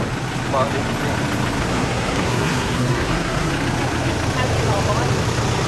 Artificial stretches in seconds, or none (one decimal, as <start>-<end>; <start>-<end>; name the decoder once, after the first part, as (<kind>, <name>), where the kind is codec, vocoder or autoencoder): 1.6-3.5 (codec, SNAC)